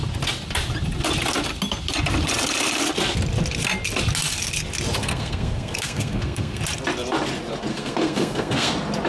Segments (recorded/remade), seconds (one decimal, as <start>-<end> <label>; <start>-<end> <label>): 0.0-5.0 recorded; 5.0-6.6 remade; 6.6-7.7 recorded; 7.7-8.7 remade; 8.7-9.1 recorded